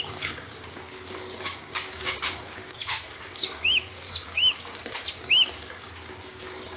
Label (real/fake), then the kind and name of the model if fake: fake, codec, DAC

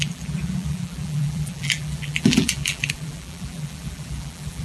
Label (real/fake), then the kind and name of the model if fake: fake, vocoder, BigVGAN v2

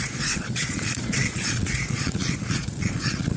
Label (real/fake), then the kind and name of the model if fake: fake, vocoder, Vocos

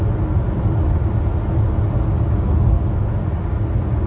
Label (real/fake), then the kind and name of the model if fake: real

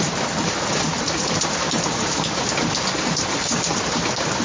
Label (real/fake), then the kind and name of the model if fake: fake, vocoder, BigVGAN v2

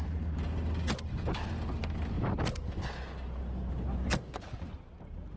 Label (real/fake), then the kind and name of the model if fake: real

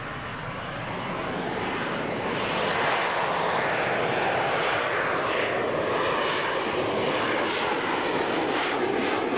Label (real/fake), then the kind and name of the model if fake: real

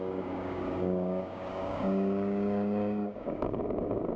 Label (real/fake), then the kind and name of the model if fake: fake, codec, DAC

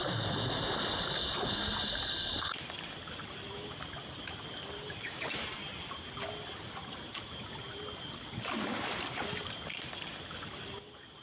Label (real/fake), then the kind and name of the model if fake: real